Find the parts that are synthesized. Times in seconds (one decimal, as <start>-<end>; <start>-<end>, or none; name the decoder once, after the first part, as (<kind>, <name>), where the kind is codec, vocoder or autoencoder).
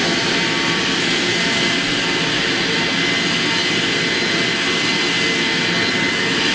none